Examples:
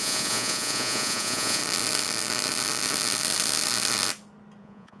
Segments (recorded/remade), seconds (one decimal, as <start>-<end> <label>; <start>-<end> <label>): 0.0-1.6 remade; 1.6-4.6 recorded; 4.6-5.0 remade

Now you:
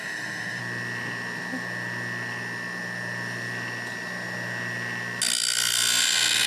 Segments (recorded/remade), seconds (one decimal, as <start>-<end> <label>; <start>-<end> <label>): 0.0-0.6 remade; 0.6-6.5 recorded

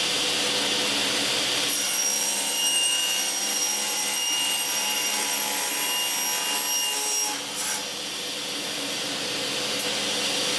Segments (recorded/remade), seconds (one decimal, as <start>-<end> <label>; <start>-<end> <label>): 0.0-1.0 recorded; 1.0-5.7 remade; 5.7-7.9 recorded; 7.9-9.6 remade; 9.6-10.6 recorded

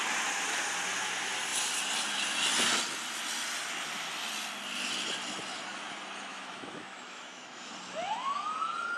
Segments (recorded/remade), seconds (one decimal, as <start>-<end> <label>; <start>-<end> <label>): 0.0-6.3 recorded; 6.3-7.7 remade; 7.7-9.0 recorded

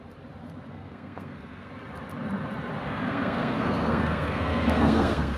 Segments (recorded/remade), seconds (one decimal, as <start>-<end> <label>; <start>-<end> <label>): 0.0-0.7 recorded; 0.7-1.7 remade; 1.7-2.8 recorded; 2.8-5.4 remade

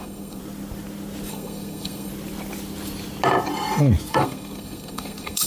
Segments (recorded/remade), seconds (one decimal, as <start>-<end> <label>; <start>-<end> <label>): 0.0-0.4 remade; 0.4-1.3 recorded; 1.3-2.1 remade; 2.1-4.1 recorded; 4.1-5.5 remade

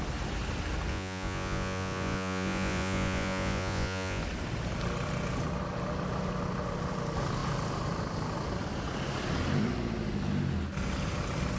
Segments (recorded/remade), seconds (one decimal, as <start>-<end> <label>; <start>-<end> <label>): 0.0-0.9 recorded; 0.9-4.2 remade; 4.2-11.6 recorded